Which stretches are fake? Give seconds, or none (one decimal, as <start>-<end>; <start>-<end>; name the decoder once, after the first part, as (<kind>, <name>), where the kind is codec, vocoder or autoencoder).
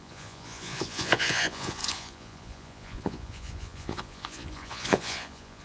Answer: 0.0-5.6 (vocoder, Vocos)